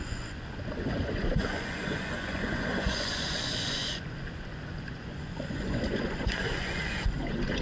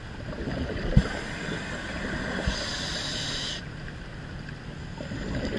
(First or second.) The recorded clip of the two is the second